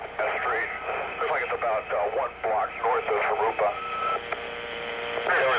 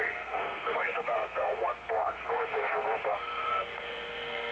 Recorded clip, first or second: first